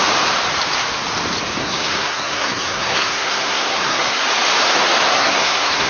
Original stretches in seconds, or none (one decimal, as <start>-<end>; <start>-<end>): 0.0-1.6; 4.2-5.1